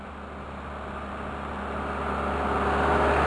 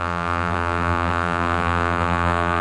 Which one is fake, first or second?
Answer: second